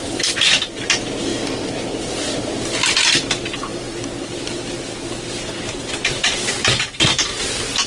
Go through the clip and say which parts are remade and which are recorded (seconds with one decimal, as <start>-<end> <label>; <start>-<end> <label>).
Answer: 0.0-7.9 recorded